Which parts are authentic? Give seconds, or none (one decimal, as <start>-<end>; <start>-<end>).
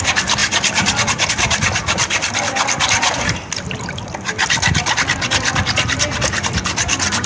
0.0-7.3